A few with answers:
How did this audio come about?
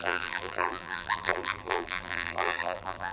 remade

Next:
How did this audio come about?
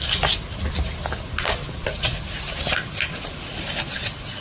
recorded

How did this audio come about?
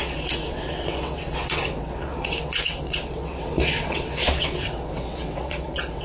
remade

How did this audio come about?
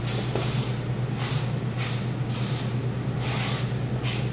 recorded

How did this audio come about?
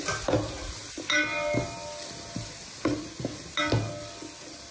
recorded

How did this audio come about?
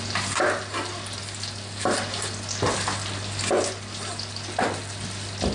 recorded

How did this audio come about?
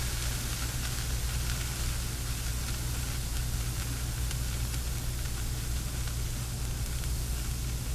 recorded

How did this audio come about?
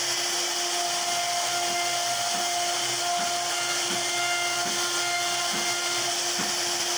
recorded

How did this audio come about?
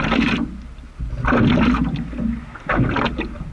recorded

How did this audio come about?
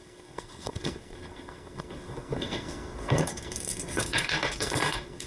remade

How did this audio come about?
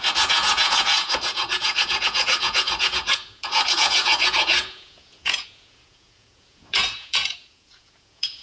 remade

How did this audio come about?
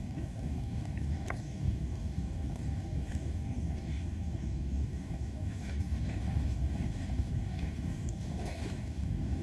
remade